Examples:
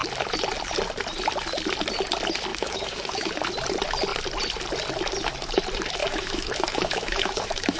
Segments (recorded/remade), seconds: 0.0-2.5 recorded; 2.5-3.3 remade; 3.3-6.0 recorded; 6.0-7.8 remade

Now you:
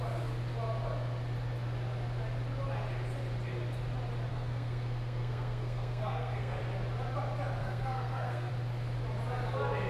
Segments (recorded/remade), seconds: 0.0-4.3 recorded; 4.3-6.6 remade; 6.6-7.6 recorded; 7.6-8.5 remade; 8.5-9.9 recorded

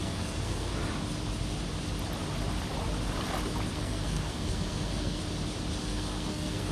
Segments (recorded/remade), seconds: 0.0-0.7 remade; 0.7-3.7 recorded; 3.7-5.2 remade; 5.2-5.8 recorded; 5.8-6.7 remade